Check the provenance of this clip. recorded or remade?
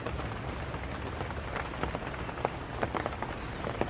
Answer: recorded